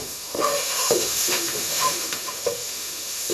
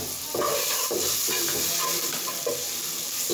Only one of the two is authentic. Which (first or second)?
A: second